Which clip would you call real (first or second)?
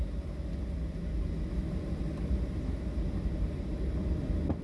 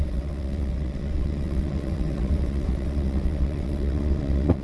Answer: first